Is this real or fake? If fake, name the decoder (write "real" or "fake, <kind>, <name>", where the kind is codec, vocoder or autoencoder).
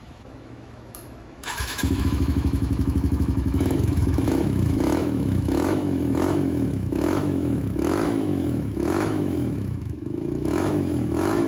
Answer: fake, autoencoder, DAC-VAE